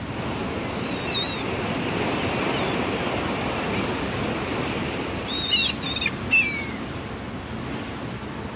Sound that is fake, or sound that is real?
real